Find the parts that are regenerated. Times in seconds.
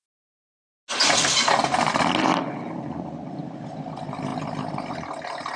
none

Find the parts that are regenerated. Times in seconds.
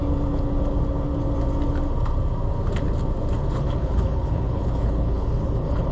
3.5-5.9 (codec, HILCodec)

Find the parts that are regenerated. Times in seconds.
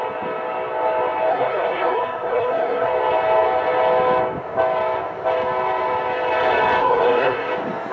1.3-2.9 (codec, SNAC); 6.8-7.5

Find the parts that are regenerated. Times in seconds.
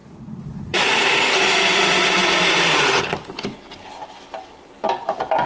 0.0-0.8 (vocoder, Vocos)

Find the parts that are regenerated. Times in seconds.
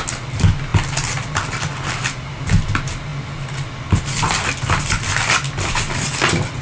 none